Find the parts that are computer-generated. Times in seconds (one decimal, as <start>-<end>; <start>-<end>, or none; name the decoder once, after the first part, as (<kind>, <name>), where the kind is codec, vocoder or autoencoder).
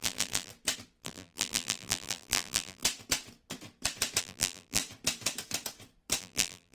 0.0-0.5 (vocoder, BigVGAN v2); 1.0-2.8; 4.2-4.8; 6.2-6.7